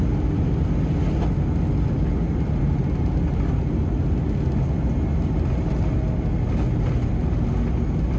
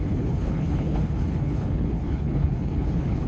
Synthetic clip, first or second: second